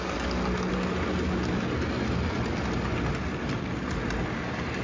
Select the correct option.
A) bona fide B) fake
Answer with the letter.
A